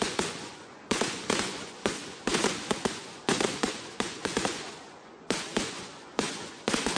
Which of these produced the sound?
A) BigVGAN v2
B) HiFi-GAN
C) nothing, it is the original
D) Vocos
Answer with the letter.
D